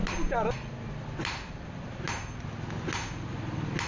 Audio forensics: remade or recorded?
recorded